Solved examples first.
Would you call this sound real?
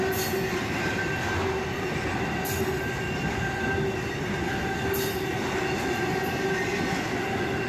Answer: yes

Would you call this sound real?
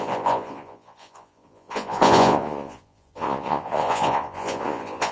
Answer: no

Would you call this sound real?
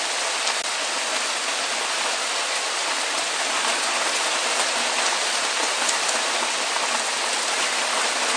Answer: yes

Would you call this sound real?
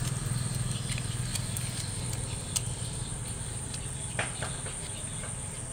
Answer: yes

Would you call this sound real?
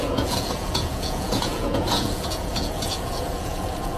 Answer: no